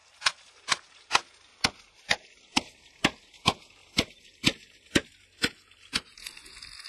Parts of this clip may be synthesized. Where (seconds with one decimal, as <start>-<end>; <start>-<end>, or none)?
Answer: none